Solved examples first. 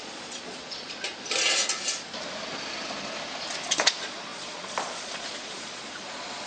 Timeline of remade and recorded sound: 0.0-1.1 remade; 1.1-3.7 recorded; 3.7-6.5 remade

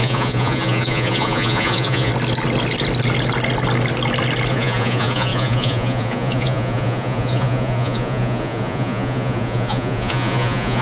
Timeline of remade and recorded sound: 0.0-2.1 remade; 2.1-4.5 recorded; 4.5-10.8 remade

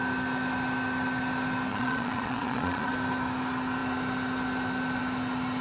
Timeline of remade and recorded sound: 0.0-1.7 recorded; 1.7-2.9 remade; 2.9-5.6 recorded